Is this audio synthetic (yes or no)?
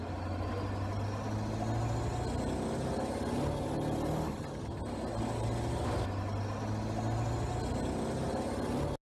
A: no